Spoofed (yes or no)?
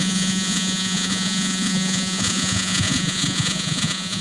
yes